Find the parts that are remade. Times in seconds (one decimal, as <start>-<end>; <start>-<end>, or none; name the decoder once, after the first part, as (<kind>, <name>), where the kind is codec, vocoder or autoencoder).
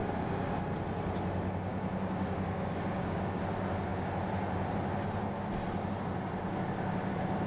1.7-3.4 (codec, DAC)